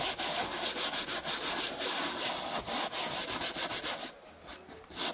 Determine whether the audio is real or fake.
real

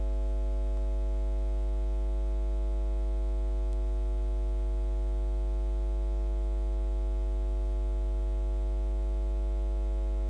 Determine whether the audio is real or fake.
real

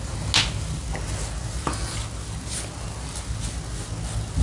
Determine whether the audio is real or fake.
real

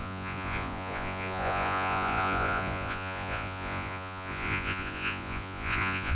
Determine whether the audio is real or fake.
fake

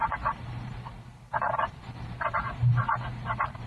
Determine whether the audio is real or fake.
real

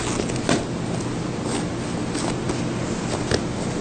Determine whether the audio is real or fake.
real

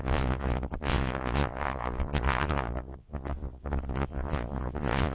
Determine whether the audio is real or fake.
fake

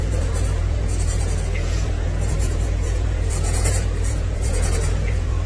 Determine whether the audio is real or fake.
fake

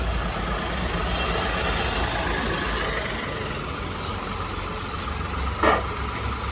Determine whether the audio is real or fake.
real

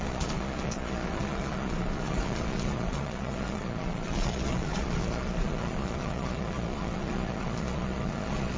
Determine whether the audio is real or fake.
fake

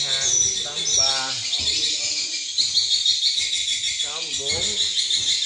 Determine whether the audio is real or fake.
real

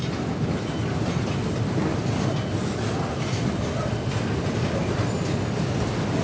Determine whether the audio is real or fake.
real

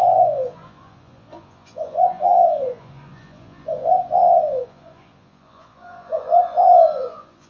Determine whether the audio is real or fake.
fake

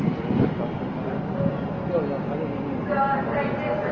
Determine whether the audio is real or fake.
real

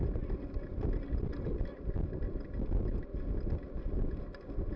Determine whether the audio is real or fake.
real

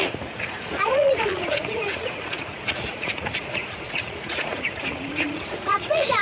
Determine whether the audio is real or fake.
fake